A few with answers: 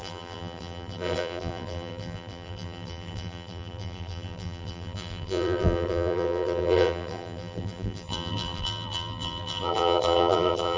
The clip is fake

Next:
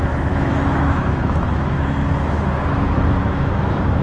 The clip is fake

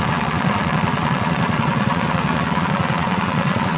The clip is fake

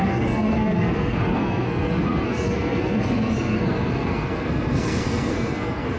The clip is fake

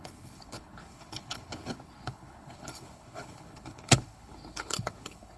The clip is fake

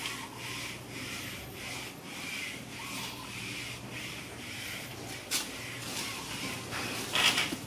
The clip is real